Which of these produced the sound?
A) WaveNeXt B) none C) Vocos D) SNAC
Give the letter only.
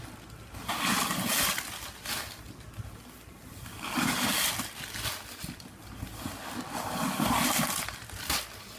B